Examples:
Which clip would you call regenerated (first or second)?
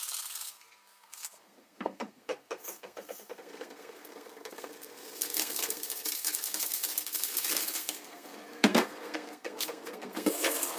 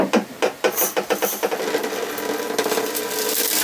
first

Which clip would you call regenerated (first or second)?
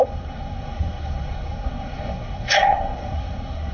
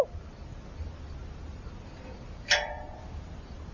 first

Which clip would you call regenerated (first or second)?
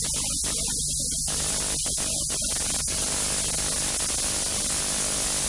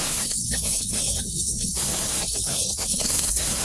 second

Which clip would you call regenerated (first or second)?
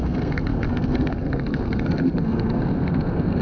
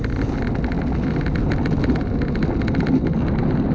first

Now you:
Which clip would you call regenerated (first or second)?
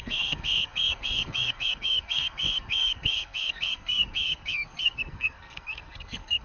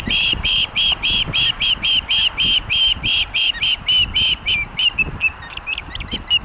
first